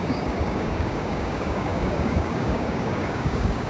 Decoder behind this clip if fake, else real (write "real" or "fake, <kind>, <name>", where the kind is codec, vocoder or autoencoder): fake, codec, DAC